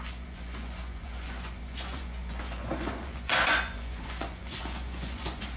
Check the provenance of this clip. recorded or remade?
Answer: remade